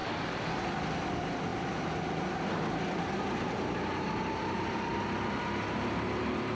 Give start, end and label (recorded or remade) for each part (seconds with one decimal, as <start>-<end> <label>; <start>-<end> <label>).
0.0-6.5 recorded